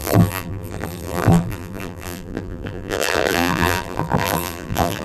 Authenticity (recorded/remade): remade